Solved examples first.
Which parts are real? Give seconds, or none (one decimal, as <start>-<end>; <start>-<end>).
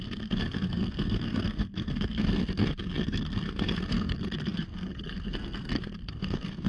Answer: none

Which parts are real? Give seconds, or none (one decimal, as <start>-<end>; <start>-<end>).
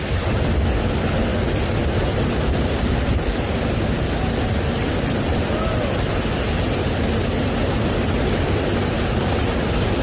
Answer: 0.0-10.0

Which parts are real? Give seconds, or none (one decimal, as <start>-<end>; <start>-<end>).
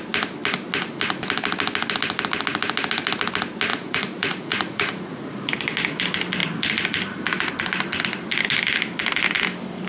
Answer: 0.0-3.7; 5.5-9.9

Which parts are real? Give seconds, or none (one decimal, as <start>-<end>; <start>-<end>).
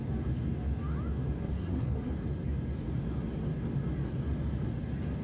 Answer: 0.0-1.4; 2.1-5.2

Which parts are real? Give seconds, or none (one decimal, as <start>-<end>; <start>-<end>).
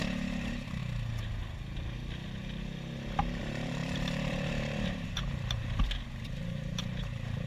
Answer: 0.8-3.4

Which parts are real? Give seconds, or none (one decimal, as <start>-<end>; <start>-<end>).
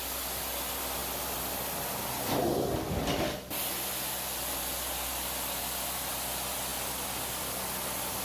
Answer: 0.0-8.2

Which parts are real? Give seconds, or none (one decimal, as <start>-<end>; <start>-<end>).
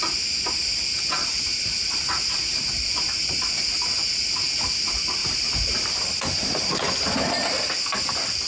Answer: 0.0-1.2; 2.0-5.2; 7.2-8.5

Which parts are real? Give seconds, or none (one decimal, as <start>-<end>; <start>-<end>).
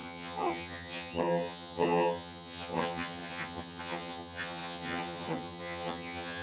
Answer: none